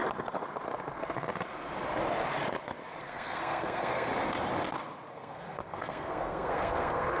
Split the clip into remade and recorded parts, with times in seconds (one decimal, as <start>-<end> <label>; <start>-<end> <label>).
0.0-3.0 recorded; 3.0-4.1 remade; 4.1-5.1 recorded; 5.1-7.2 remade